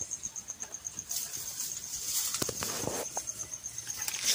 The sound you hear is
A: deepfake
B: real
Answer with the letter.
B